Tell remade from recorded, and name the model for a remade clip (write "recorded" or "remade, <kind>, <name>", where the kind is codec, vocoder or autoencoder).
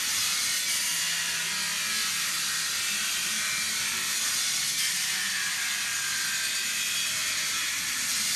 recorded